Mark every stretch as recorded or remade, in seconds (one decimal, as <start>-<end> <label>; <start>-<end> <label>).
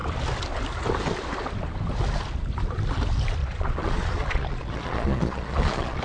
0.0-3.4 recorded; 3.4-6.0 remade